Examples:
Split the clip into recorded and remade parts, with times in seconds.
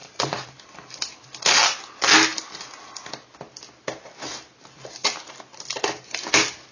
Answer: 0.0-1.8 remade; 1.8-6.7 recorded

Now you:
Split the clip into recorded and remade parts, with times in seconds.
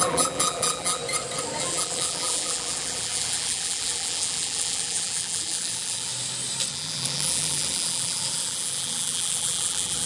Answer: 0.0-1.0 remade; 1.0-1.6 recorded; 1.6-6.1 remade; 6.1-6.7 recorded; 6.7-10.1 remade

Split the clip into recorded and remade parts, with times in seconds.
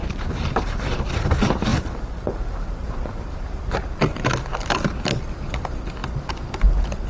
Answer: 0.0-1.1 remade; 1.1-1.7 recorded; 1.7-4.3 remade; 4.3-7.1 recorded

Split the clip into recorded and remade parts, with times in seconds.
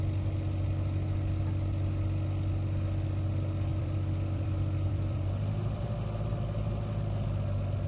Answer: 0.0-3.7 recorded; 3.7-5.8 remade; 5.8-7.9 recorded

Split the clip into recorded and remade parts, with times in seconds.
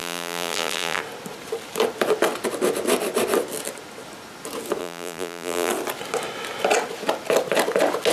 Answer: 0.0-1.0 remade; 1.0-4.8 recorded; 4.8-5.7 remade; 5.7-8.1 recorded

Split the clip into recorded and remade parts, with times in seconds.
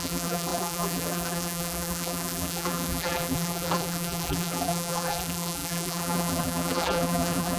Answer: 0.0-7.6 remade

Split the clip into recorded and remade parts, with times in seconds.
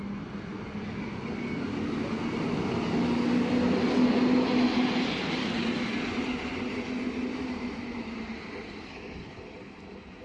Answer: 0.0-10.2 recorded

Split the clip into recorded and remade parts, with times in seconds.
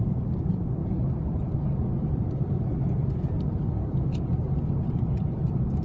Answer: 0.0-2.1 recorded; 2.1-4.6 remade; 4.6-5.8 recorded